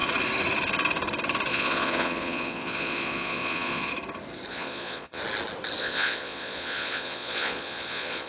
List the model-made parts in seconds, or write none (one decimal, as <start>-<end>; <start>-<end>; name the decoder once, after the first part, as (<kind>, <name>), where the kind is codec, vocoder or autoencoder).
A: 1.5-3.9 (vocoder, Vocos); 4.5-5.2; 5.8-8.3